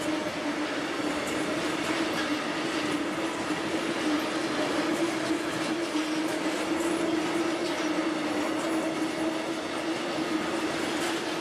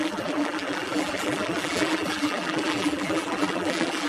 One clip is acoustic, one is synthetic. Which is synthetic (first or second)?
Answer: second